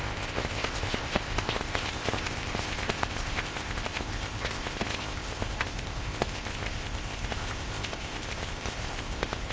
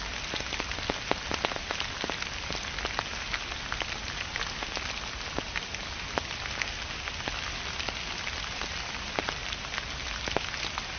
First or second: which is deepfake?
first